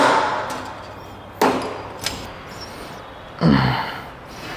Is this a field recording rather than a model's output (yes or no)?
yes